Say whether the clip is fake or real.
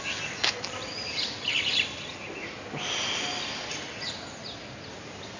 real